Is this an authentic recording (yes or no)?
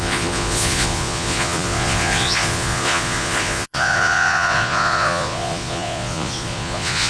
no